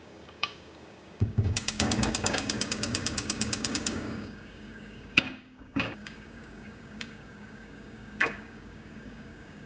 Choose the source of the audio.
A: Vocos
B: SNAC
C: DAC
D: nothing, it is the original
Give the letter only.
C